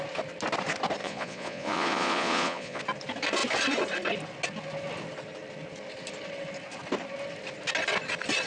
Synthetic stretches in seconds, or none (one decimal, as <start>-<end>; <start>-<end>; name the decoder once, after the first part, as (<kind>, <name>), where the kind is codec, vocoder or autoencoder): 1.0-2.8 (vocoder, Vocos)